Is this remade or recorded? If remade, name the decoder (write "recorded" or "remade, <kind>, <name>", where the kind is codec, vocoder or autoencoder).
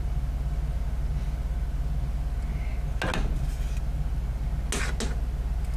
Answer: recorded